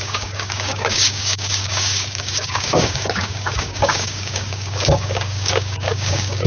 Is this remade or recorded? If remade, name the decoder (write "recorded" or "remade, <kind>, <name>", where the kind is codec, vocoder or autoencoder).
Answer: remade, codec, DAC